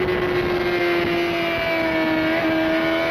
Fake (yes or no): no